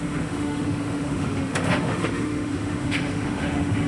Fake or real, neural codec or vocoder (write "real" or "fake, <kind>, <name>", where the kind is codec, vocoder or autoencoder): fake, autoencoder, DAC-VAE